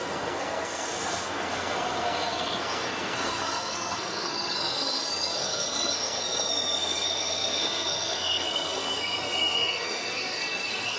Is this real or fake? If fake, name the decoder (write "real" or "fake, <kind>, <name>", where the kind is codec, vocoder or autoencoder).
fake, codec, SNAC